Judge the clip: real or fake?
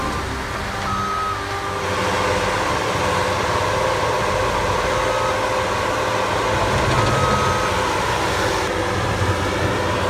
real